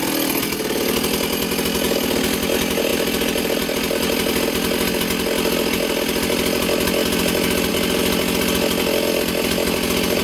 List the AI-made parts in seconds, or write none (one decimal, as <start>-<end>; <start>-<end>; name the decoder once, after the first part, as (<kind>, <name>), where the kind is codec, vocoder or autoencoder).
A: none